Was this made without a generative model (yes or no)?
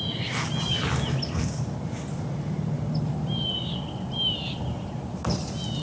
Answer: yes